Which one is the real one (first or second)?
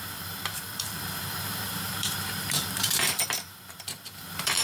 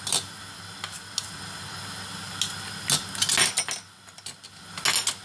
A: second